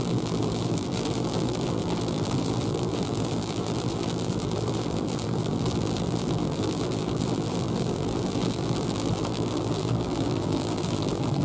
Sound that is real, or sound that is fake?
fake